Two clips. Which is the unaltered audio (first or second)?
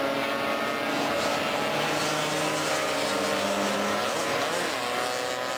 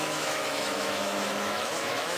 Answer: first